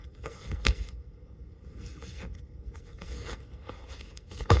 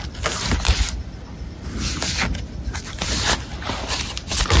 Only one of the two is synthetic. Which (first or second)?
first